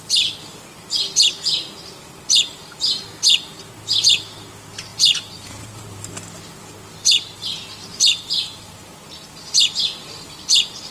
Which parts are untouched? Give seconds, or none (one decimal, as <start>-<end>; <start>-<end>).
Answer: 0.0-4.9; 6.1-7.9; 9.1-10.9